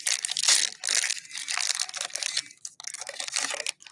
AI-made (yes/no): no